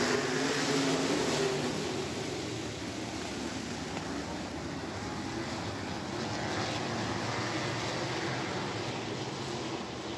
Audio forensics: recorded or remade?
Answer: recorded